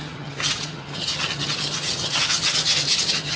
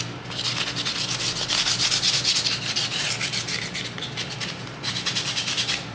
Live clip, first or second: second